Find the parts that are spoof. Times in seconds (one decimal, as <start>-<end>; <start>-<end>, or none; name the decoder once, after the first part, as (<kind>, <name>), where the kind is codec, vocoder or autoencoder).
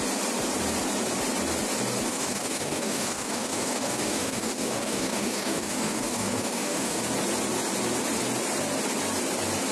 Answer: 2.1-7.0 (codec, DAC)